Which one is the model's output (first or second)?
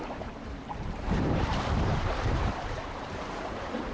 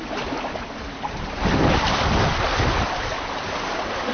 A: first